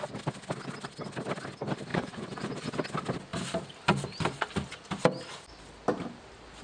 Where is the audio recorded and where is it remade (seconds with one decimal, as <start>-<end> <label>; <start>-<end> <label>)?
0.0-1.9 recorded; 1.9-2.7 remade; 2.7-6.6 recorded